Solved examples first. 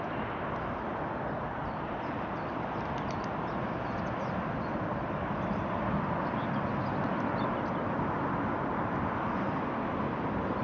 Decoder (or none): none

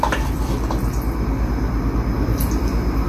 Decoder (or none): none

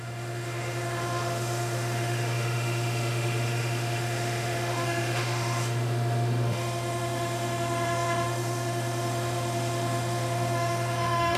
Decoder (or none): autoencoder, DAC-VAE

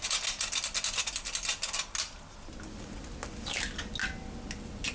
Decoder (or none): none